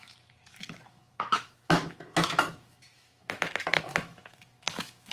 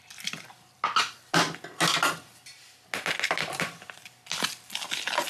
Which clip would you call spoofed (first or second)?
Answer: first